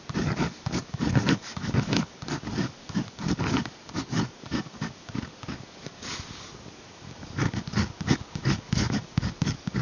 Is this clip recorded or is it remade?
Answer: remade